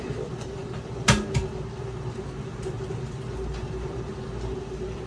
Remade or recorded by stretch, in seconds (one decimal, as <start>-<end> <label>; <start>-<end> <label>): 0.0-5.1 recorded

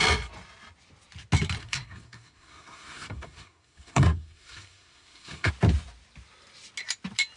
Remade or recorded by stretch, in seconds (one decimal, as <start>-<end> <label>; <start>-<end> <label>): 0.0-1.6 recorded; 1.6-5.5 remade; 5.5-7.4 recorded

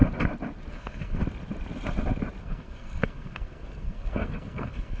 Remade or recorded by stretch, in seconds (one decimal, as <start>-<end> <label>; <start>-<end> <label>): 0.0-0.7 recorded; 0.7-1.2 remade; 1.2-2.4 recorded; 2.4-5.0 remade

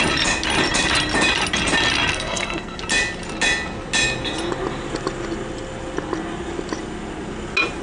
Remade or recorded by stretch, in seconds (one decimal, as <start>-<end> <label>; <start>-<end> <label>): 0.0-2.1 recorded; 2.1-2.8 remade; 2.8-7.8 recorded

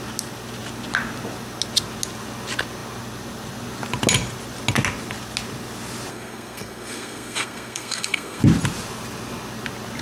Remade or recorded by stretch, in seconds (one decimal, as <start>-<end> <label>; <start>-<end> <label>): 0.0-6.1 recorded; 6.1-8.4 remade; 8.4-10.0 recorded

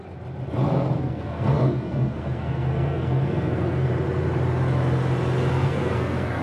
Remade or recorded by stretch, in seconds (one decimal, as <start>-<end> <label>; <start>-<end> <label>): 0.0-0.7 recorded; 0.7-3.9 remade; 3.9-5.5 recorded; 5.5-6.4 remade

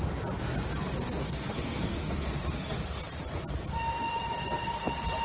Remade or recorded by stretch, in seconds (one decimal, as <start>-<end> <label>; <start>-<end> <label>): 0.0-1.2 recorded; 1.2-2.1 remade; 2.1-5.2 recorded

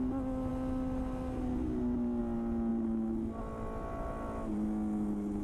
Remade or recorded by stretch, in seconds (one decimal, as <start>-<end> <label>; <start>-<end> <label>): 0.0-5.4 recorded